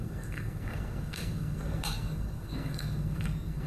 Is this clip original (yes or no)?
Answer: no